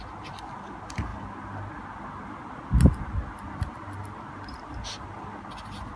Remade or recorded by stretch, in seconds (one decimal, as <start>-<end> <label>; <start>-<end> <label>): 0.0-6.0 recorded